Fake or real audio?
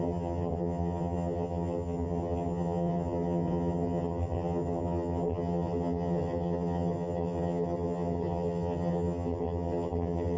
fake